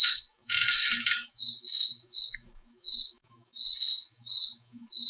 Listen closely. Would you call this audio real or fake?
fake